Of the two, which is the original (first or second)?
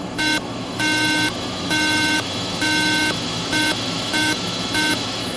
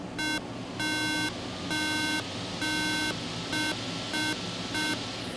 second